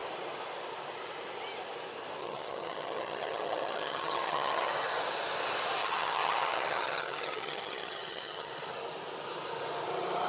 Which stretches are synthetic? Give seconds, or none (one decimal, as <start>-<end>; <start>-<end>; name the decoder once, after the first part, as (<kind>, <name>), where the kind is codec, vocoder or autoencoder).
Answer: 2.2-4.7 (vocoder, HiFi-GAN); 5.8-8.5